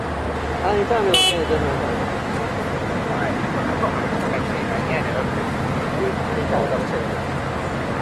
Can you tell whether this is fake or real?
real